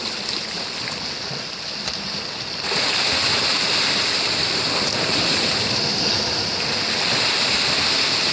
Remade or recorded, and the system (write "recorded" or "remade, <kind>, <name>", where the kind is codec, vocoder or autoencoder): recorded